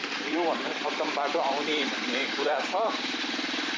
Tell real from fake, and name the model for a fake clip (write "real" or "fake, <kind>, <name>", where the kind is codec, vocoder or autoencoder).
fake, vocoder, BigVGAN v2